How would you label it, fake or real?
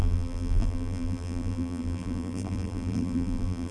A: fake